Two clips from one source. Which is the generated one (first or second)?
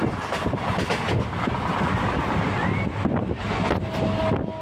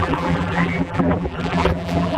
second